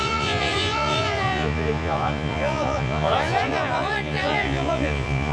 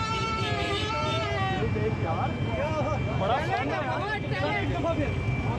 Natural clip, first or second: second